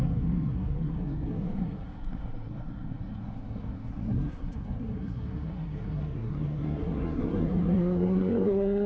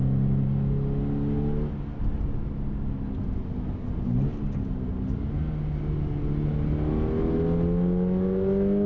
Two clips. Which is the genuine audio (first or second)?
second